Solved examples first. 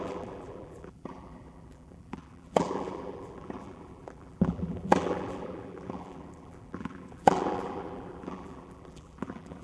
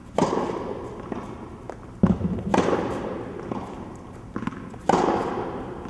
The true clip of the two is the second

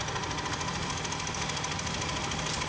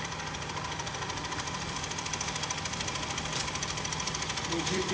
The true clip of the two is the first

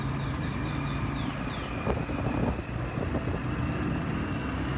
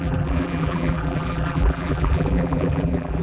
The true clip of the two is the first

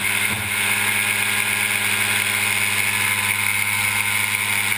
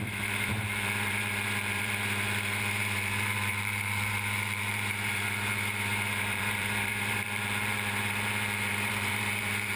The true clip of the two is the first